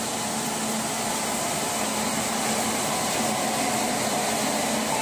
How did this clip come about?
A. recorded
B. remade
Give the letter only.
A